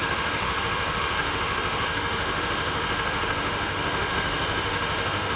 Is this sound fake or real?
fake